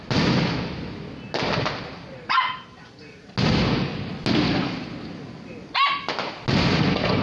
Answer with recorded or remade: recorded